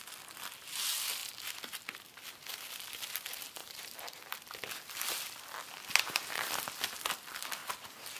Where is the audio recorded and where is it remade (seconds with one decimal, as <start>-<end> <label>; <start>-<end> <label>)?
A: 0.0-3.6 recorded; 3.6-4.2 remade; 4.2-8.2 recorded